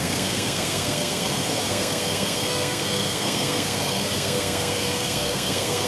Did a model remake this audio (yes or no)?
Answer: yes